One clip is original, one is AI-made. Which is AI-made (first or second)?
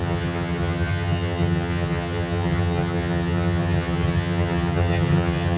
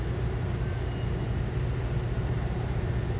first